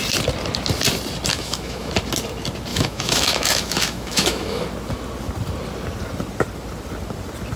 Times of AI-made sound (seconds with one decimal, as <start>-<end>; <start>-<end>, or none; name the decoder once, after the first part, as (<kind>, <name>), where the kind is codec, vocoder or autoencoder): 1.3-1.9 (autoencoder, DAC-VAE); 2.7-4.6